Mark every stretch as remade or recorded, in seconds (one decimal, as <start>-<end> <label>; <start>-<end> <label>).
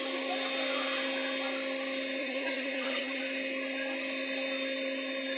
0.0-2.2 recorded; 2.2-3.2 remade; 3.2-5.4 recorded